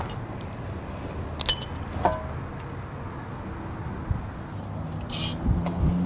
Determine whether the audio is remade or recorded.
recorded